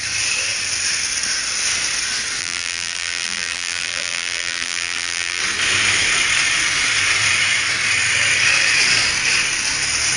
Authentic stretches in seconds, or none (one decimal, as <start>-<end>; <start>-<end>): 0.0-2.4; 5.4-10.2